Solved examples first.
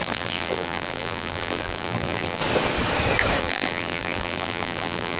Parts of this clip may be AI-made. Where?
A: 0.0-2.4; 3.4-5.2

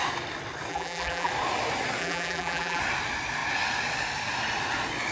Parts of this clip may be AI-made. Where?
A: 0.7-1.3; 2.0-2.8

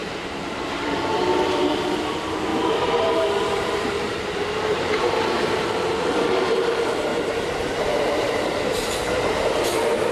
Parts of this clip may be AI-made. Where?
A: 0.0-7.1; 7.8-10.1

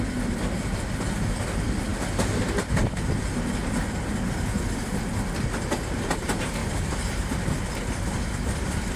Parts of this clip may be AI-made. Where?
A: 6.6-7.6